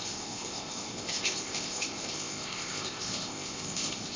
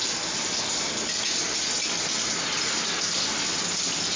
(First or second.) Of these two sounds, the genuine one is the second